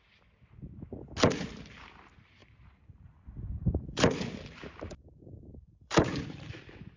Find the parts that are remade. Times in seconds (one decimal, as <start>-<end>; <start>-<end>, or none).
2.4-6.2